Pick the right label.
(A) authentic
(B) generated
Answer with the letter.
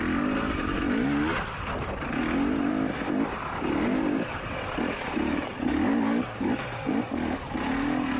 A